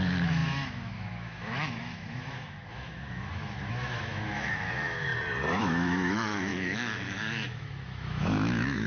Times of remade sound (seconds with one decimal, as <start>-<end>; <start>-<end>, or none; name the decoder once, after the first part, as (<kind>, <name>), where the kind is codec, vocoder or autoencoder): 0.0-5.1 (autoencoder, DAC-VAE); 5.6-8.9